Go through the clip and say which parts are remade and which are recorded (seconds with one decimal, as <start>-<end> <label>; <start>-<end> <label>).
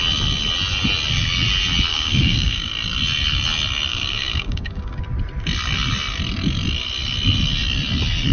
0.0-1.9 recorded; 1.9-2.7 remade; 2.7-3.9 recorded; 3.9-5.0 remade; 5.0-8.3 recorded